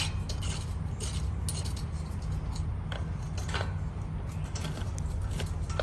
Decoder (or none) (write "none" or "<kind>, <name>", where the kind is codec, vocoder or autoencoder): none